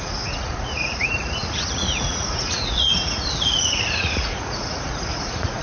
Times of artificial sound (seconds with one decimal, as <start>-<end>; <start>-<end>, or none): 0.0-5.6